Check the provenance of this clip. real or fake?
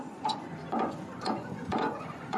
fake